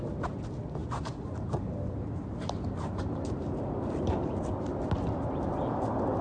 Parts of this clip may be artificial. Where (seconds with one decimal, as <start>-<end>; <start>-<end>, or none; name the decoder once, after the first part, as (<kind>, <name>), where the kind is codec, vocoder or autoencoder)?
0.8-4.5 (vocoder, BigVGAN v2)